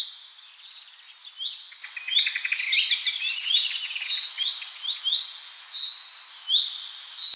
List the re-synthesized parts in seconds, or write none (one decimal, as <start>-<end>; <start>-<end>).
3.2-3.8

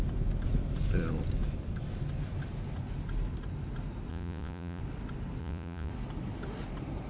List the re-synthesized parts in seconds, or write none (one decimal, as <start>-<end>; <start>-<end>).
4.1-4.8; 5.4-5.9

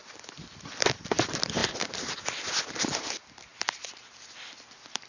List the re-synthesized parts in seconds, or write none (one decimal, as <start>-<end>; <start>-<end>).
none